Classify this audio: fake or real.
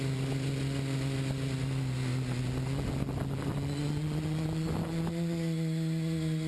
real